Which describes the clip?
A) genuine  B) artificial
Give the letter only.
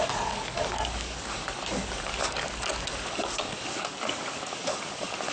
B